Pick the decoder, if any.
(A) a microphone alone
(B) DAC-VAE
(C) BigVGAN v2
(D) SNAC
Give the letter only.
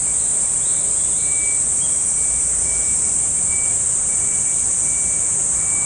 A